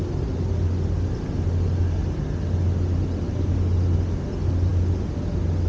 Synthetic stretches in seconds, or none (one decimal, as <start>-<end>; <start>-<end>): none